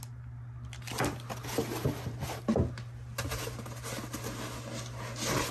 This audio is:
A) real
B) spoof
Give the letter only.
A